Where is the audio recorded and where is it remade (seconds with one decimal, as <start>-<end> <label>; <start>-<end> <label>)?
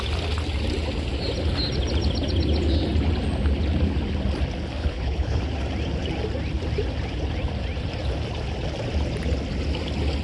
0.0-4.8 recorded; 4.8-5.4 remade; 5.4-10.2 recorded